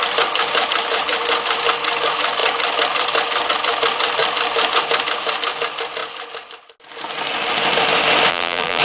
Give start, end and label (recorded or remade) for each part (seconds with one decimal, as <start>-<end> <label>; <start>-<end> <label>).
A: 0.0-8.3 recorded; 8.3-8.8 remade